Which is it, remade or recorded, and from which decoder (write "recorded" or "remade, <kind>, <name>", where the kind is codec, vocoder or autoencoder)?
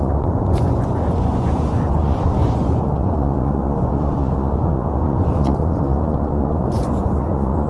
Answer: remade, vocoder, Vocos